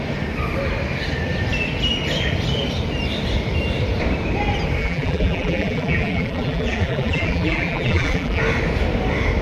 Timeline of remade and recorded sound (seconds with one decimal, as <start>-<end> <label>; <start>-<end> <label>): 0.0-4.8 recorded; 4.8-8.4 remade; 8.4-9.4 recorded